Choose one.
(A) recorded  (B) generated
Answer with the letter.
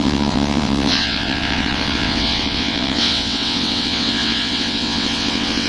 B